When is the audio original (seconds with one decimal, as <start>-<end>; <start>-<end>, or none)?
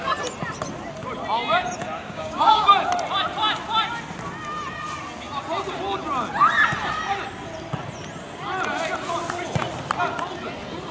0.0-2.0; 2.7-10.9